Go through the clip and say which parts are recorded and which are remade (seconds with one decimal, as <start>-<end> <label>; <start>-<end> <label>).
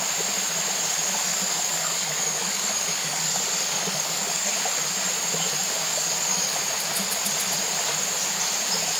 0.0-1.3 recorded; 1.3-4.5 remade; 4.5-5.9 recorded; 5.9-6.6 remade; 6.6-9.0 recorded